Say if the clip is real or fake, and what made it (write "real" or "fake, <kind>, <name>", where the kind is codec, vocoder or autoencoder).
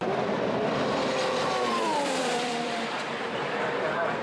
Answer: fake, vocoder, BigVGAN v2